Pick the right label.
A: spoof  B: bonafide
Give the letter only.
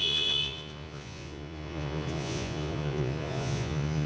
A